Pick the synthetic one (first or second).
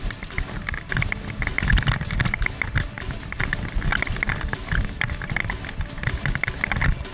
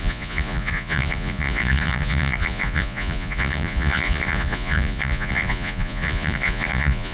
second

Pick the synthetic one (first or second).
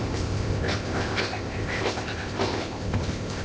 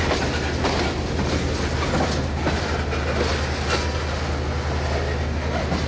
first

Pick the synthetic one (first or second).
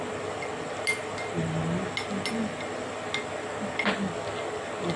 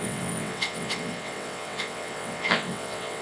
second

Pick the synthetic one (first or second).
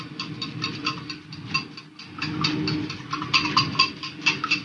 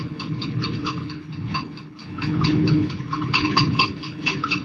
second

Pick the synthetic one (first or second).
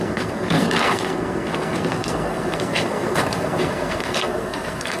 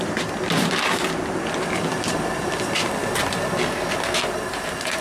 first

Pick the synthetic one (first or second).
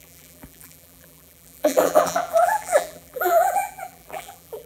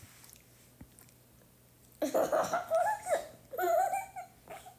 first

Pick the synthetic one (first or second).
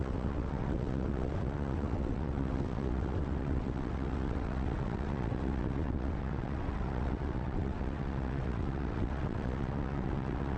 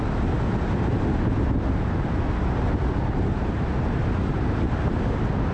first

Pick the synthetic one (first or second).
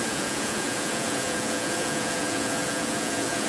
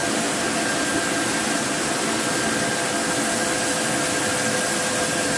first